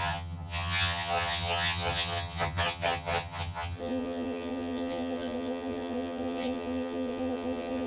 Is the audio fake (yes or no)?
yes